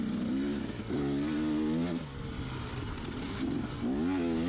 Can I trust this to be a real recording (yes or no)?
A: yes